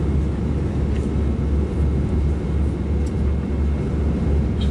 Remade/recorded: recorded